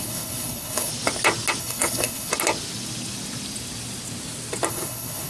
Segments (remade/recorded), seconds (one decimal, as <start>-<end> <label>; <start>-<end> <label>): 0.0-0.9 remade; 0.9-1.6 recorded; 1.6-2.3 remade; 2.3-4.7 recorded; 4.7-5.3 remade